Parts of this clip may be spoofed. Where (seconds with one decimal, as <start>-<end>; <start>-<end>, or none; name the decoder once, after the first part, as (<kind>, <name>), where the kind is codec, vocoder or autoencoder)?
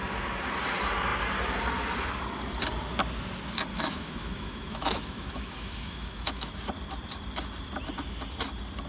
3.7-6.5 (autoencoder, DAC-VAE)